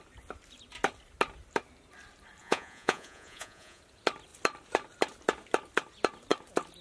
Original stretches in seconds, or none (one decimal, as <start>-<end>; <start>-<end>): 0.0-2.4; 3.8-6.8